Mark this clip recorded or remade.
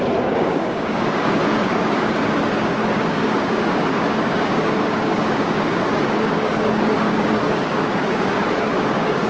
remade